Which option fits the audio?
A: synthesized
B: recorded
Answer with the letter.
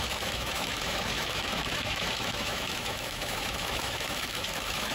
A